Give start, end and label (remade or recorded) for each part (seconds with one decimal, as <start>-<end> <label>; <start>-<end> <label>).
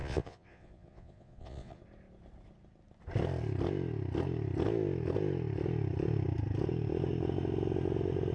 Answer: 0.0-1.8 remade; 1.8-8.3 recorded